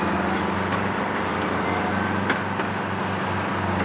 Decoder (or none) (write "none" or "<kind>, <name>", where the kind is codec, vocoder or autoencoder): none